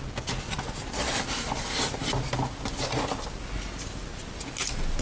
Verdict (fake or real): real